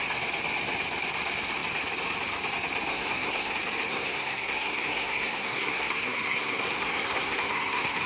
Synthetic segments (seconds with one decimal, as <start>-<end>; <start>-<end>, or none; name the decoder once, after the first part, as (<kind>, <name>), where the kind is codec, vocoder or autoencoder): 2.9-3.5 (codec, SNAC); 3.9-8.1